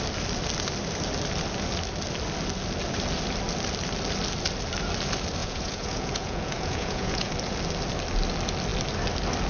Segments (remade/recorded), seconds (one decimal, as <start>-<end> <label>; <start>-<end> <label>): 0.0-5.4 recorded; 5.4-7.3 remade; 7.3-9.5 recorded